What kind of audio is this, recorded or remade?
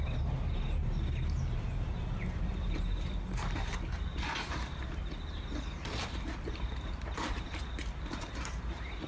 remade